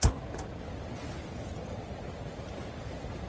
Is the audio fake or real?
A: real